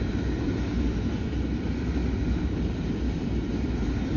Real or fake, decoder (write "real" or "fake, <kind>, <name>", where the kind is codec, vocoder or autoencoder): real